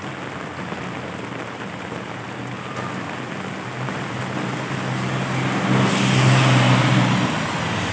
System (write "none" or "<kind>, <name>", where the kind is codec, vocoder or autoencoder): none